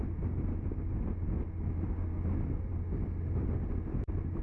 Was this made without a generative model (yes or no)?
yes